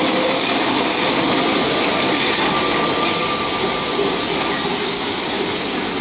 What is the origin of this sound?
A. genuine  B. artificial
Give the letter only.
A